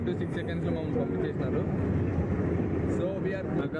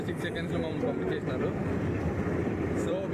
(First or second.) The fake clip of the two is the second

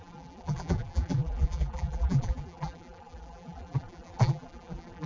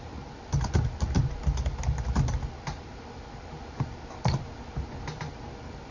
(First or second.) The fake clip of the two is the first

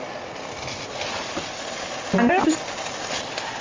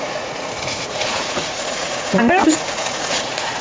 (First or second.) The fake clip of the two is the second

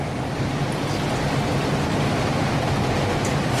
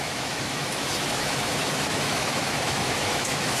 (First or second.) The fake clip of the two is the second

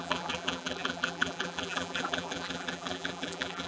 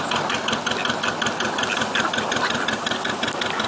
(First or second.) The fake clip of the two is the first